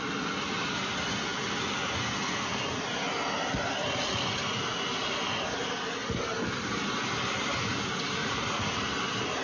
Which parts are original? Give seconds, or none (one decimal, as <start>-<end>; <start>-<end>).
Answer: 0.0-8.2; 8.8-9.4

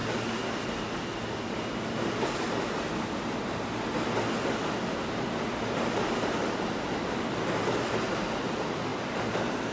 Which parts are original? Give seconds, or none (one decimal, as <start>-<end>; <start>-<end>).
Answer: 0.0-9.7

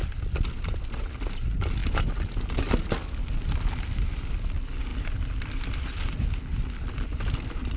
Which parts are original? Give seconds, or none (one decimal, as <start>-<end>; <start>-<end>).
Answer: 0.0-7.8

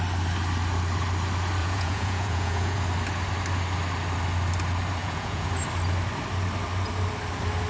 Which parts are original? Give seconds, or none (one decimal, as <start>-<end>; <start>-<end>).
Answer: 0.0-1.6; 2.8-5.0; 5.5-7.7

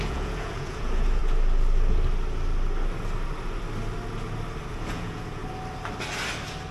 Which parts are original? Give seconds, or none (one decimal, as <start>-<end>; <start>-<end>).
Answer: 1.2-4.7; 5.4-6.7

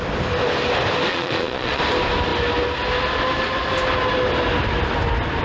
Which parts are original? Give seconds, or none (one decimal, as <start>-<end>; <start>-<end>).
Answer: 0.0-1.1; 1.8-5.4